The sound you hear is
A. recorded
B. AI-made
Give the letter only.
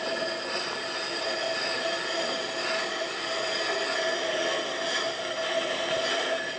B